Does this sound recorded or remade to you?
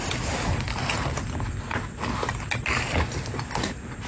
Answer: recorded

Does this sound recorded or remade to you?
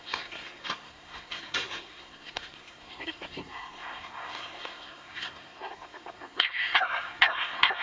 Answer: remade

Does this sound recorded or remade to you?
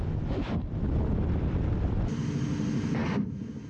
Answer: recorded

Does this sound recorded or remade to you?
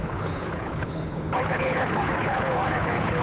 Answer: remade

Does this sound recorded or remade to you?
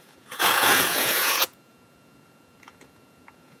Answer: remade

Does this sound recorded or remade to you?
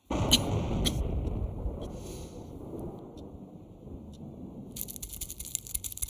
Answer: recorded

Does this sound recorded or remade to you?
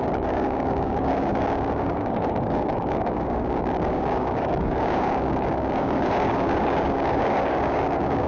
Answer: remade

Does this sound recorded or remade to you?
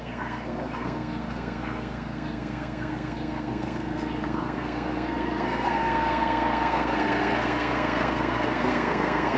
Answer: remade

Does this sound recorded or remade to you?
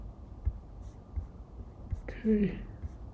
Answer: remade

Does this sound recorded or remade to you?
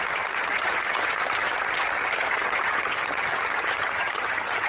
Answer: remade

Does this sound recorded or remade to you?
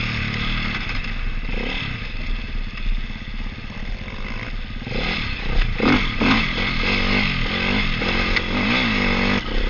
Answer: recorded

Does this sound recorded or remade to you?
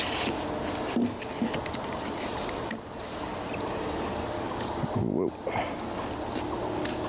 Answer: recorded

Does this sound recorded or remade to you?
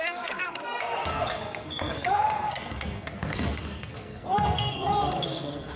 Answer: remade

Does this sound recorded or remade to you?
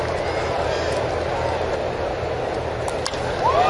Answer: recorded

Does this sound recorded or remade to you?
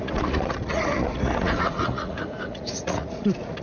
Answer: remade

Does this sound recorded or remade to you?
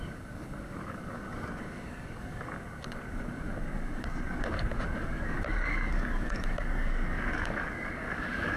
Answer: remade